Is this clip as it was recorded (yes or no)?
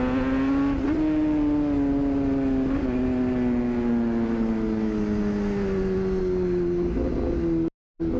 yes